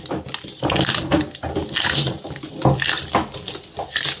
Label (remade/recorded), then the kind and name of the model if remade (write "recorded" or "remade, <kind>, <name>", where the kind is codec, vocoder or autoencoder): remade, vocoder, BigVGAN v2